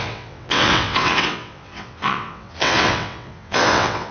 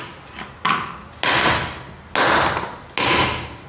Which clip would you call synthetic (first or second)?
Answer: first